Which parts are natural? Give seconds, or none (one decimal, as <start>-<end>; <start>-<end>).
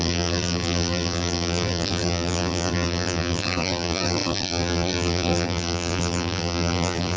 none